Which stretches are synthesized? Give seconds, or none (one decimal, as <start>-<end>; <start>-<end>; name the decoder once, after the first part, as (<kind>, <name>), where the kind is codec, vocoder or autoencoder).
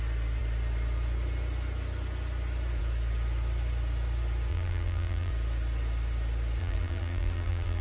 4.5-5.3 (vocoder, BigVGAN v2); 6.6-7.8